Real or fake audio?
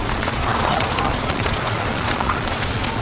fake